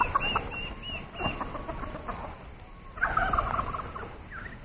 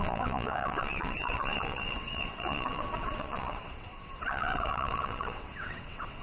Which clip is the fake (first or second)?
second